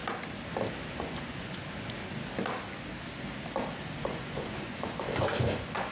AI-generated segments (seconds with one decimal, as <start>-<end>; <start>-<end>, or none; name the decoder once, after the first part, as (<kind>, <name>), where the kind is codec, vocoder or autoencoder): 0.9-2.0 (vocoder, Vocos); 4.0-5.9